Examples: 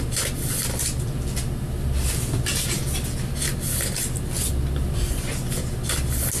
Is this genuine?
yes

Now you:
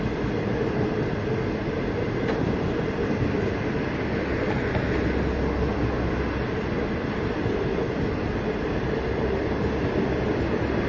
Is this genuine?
yes